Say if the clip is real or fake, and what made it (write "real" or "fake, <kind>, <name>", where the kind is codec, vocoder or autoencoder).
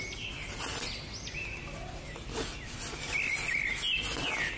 real